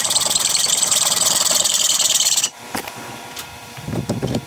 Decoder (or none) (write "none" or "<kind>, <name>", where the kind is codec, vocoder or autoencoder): vocoder, BigVGAN v2